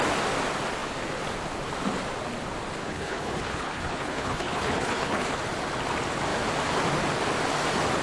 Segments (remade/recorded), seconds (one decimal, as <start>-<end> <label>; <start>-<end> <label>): 0.0-2.8 recorded; 2.8-5.4 remade; 5.4-8.0 recorded